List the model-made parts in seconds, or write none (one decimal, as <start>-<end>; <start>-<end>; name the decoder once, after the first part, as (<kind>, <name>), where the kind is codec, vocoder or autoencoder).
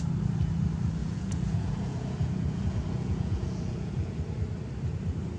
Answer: 1.0-4.2 (vocoder, Vocos)